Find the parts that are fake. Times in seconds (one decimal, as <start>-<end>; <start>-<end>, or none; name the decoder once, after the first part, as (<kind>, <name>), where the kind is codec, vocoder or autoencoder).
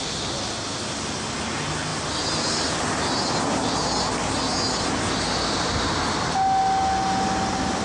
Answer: none